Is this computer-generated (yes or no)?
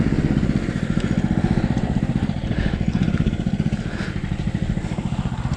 no